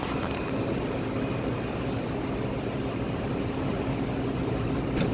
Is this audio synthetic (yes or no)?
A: no